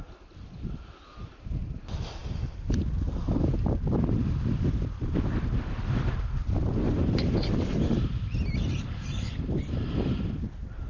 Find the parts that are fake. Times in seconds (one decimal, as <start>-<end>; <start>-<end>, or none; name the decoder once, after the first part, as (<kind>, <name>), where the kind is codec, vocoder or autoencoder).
none